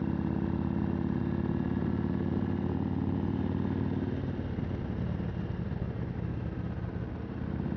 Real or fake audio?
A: real